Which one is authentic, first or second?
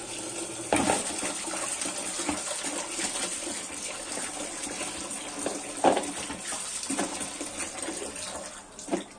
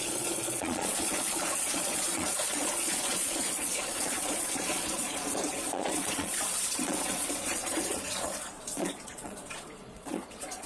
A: first